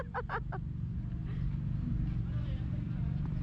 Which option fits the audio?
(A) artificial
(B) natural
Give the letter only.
B